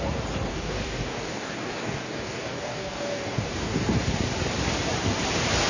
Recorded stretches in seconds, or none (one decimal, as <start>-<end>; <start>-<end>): 0.0-0.5; 3.8-5.7